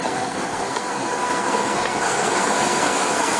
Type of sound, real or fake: fake